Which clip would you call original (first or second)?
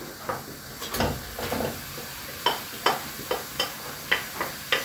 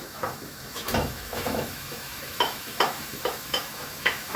first